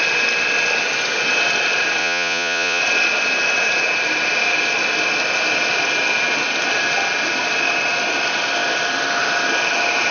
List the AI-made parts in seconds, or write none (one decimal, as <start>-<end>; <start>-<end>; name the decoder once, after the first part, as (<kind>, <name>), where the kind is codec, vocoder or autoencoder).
2.0-2.8 (vocoder, Vocos)